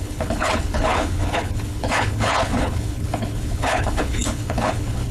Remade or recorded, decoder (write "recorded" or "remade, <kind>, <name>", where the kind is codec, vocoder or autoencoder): remade, codec, HILCodec